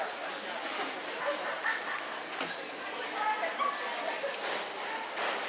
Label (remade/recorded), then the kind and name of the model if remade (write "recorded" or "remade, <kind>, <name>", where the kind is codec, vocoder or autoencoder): recorded